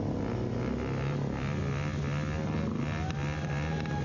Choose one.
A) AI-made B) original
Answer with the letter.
B